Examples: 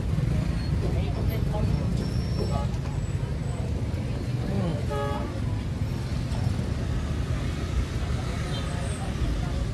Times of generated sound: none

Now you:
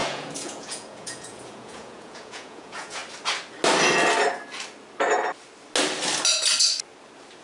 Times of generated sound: 0.0-3.0

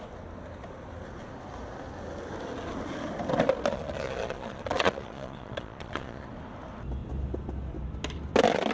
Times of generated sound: 3.7-6.3

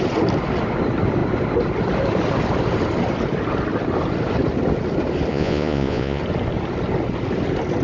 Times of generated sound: 5.3-6.2

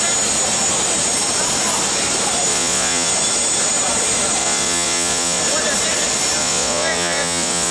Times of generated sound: 2.5-3.1; 4.4-5.4; 6.4-7.7